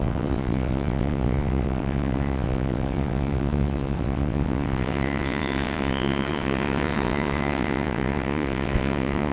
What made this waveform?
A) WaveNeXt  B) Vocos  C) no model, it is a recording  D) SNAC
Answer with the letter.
A